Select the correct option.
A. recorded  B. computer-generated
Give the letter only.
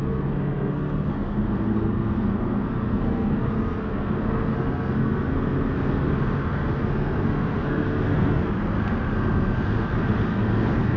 B